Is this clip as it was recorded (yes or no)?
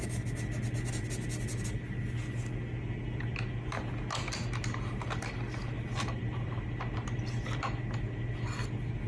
yes